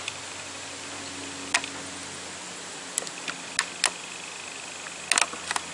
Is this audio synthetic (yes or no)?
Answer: no